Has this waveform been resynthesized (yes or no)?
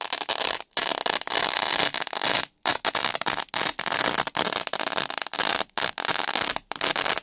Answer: no